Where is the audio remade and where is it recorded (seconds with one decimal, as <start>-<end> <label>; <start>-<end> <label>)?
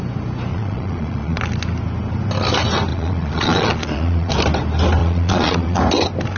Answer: 0.0-0.5 recorded; 0.5-1.4 remade; 1.4-2.9 recorded; 2.9-4.3 remade; 4.3-5.0 recorded; 5.0-5.8 remade; 5.8-6.4 recorded